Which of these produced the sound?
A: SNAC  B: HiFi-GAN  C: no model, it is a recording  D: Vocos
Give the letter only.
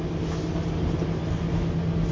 C